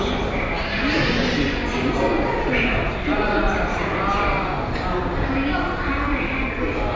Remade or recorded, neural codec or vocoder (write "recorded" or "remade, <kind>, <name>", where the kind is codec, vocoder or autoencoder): recorded